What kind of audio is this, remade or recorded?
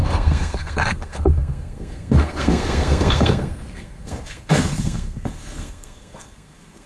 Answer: remade